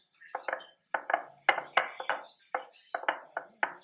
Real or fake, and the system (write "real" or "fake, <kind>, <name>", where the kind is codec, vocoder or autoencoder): real